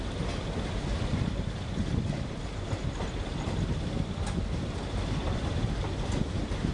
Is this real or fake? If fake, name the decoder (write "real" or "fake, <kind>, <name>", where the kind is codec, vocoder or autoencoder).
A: real